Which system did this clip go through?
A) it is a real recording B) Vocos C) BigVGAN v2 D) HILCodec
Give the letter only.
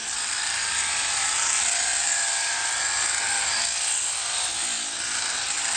C